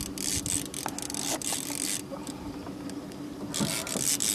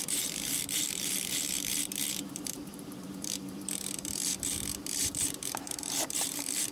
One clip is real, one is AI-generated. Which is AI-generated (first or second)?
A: second